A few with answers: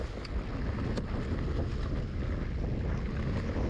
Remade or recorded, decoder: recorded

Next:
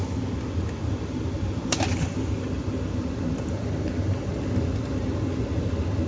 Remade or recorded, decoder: recorded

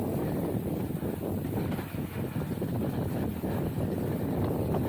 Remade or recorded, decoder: recorded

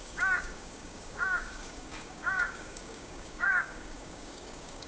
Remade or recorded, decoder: remade, codec, DAC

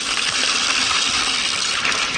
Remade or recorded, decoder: remade, vocoder, BigVGAN v2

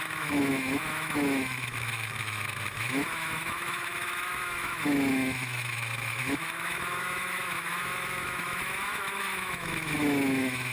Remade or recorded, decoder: remade, autoencoder, DAC-VAE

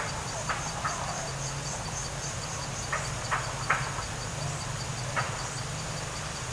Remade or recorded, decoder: recorded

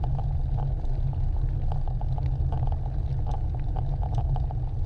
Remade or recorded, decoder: recorded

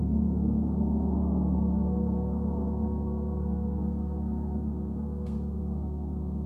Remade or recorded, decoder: remade, codec, SNAC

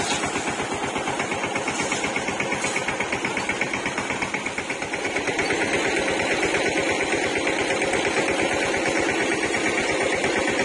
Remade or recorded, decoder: recorded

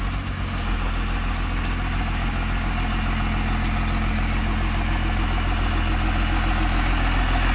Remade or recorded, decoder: recorded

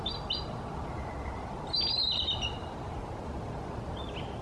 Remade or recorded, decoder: recorded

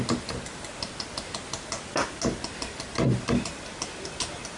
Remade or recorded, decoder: recorded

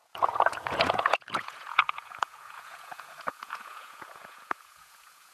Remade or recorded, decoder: remade, vocoder, Vocos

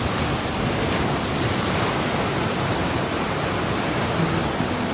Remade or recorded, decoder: recorded